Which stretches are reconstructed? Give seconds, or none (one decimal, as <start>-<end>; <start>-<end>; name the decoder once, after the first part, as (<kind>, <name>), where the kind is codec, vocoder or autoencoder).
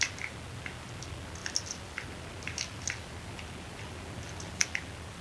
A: none